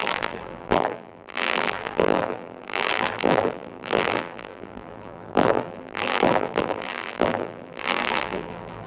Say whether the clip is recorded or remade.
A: remade